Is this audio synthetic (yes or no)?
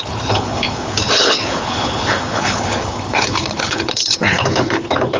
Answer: yes